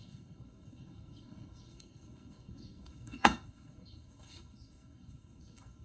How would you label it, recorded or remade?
remade